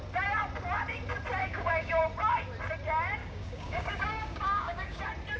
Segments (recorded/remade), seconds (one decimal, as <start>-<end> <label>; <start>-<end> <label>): 0.0-1.4 recorded; 1.4-2.0 remade; 2.0-3.2 recorded; 3.2-5.0 remade; 5.0-5.4 recorded